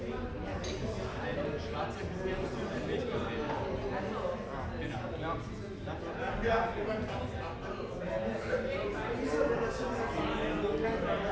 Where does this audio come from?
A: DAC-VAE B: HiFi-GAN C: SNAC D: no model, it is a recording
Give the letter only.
D